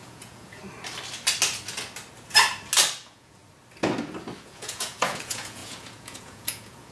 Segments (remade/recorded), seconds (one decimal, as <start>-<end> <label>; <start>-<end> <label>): 0.0-0.6 remade; 0.6-3.0 recorded; 3.0-3.4 remade; 3.4-4.4 recorded; 4.4-6.9 remade